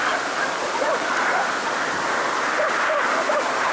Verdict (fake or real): real